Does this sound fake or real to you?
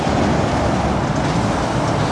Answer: real